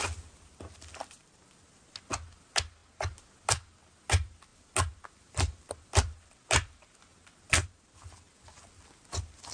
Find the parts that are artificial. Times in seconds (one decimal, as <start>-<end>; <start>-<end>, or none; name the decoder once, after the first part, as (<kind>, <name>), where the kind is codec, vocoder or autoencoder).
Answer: none